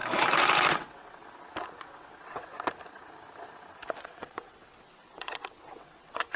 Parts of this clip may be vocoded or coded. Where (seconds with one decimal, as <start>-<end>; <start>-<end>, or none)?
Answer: 0.7-1.2; 1.8-2.5; 4.0-6.4